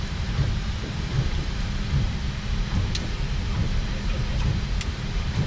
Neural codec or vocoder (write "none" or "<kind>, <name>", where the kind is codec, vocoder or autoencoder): vocoder, BigVGAN v2